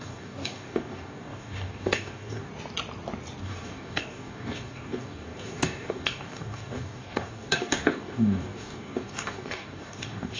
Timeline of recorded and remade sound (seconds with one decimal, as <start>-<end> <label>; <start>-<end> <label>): 0.0-2.5 remade; 2.5-3.4 recorded; 3.4-10.4 remade